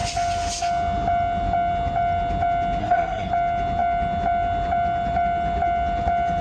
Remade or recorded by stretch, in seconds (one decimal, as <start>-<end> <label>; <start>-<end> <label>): 0.0-2.8 recorded; 2.8-3.3 remade; 3.3-6.4 recorded